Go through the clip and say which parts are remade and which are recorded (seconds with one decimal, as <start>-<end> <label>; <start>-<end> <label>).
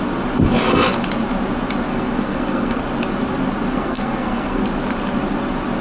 0.0-1.9 recorded; 1.9-2.8 remade; 2.8-3.7 recorded; 3.7-4.6 remade; 4.6-5.8 recorded